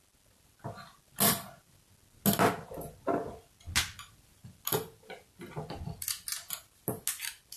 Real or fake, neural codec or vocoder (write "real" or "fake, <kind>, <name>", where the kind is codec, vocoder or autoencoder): real